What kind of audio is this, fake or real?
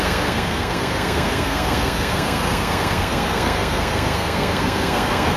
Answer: fake